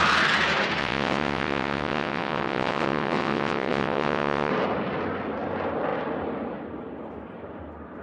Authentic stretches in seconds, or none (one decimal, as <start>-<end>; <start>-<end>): 0.0-0.8; 4.5-8.0